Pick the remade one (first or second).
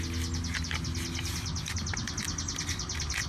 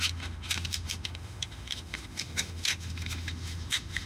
second